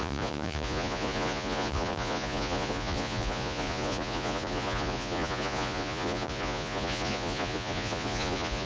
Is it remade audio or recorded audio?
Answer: remade